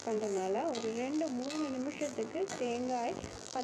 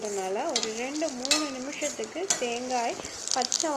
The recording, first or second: second